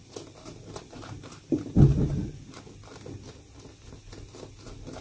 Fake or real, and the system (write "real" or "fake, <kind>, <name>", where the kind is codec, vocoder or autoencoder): real